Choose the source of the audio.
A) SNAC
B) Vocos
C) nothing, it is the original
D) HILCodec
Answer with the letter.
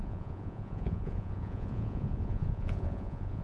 B